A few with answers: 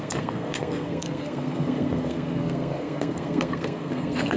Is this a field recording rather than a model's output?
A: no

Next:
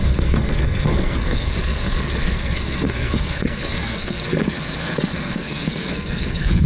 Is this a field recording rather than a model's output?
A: no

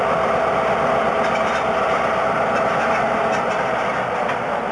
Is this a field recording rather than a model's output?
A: yes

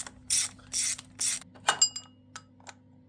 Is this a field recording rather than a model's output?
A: yes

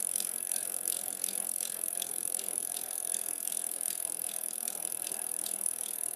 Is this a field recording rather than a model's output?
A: no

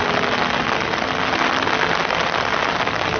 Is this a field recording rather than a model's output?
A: yes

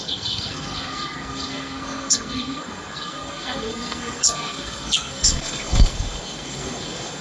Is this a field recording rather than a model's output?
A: no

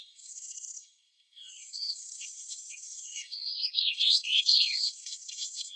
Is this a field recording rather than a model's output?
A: no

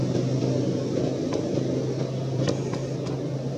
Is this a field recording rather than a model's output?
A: yes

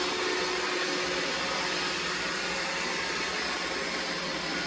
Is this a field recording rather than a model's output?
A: yes